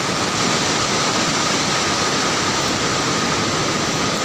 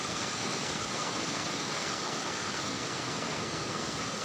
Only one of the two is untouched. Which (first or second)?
first